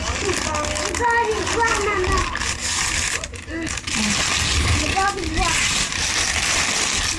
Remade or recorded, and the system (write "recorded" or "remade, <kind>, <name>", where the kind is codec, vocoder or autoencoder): recorded